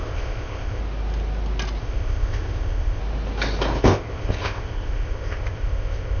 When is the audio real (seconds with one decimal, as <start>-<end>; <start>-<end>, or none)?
0.8-1.8; 3.0-3.8